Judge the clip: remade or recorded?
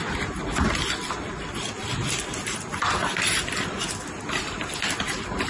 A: recorded